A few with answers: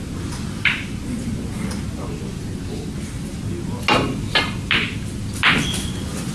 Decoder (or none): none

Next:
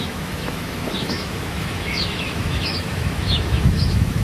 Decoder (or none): autoencoder, DAC-VAE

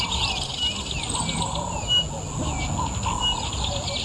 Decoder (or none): none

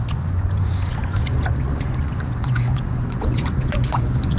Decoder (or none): vocoder, Vocos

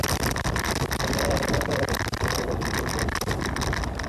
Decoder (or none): none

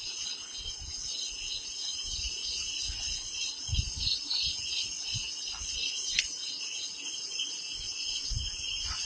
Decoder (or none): none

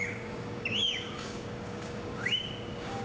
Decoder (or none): codec, DAC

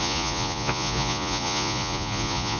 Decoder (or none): vocoder, Vocos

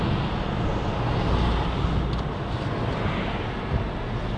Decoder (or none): none